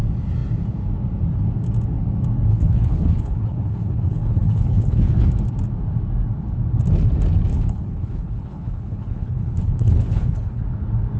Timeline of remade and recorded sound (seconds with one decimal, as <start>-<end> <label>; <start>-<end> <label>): 0.0-2.5 recorded; 2.5-5.3 remade; 5.3-7.5 recorded; 7.5-10.6 remade; 10.6-11.2 recorded